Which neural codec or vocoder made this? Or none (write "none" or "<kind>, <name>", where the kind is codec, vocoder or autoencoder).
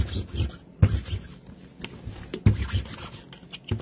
none